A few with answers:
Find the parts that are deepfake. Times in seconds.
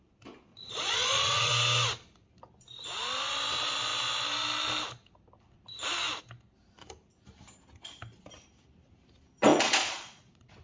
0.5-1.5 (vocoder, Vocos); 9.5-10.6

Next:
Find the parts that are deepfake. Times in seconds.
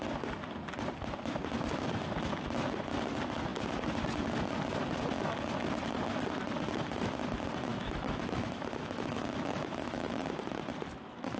7.7-10.4 (autoencoder, DAC-VAE)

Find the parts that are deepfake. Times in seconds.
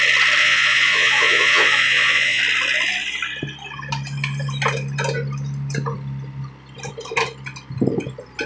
0.4-2.4 (vocoder, Vocos)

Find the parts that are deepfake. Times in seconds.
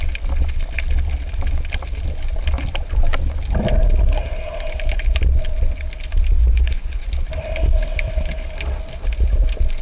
6.4-7.1 (vocoder, Vocos)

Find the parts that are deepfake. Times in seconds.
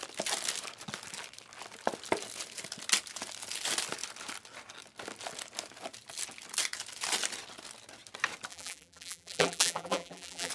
8.5-10.5 (vocoder, BigVGAN v2)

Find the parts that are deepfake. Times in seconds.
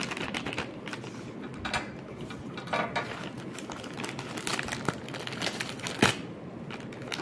none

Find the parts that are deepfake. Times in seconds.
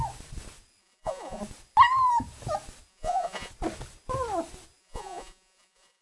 0.8-1.4 (vocoder, Vocos); 2.9-3.5; 4.8-6.0